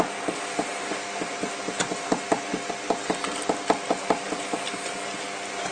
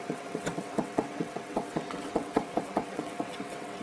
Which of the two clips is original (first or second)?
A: first